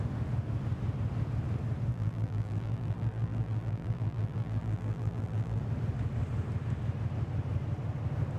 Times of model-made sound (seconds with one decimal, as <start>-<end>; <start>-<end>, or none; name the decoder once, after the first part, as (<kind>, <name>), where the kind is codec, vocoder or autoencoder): 1.9-5.6 (vocoder, BigVGAN v2)